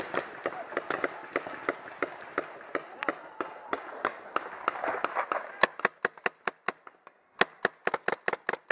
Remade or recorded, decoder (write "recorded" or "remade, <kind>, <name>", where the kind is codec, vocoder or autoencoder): recorded